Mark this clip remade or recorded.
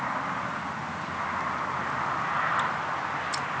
recorded